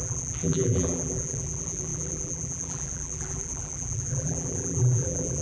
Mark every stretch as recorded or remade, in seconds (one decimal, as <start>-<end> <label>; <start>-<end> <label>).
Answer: 0.0-5.4 remade